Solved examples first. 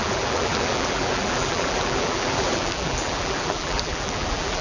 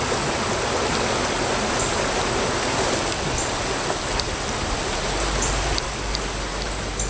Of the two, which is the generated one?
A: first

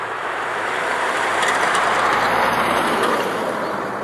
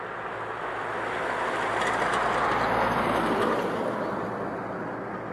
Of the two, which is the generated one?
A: first